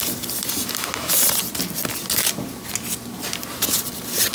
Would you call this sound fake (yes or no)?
no